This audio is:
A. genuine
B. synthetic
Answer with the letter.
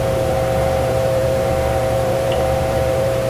B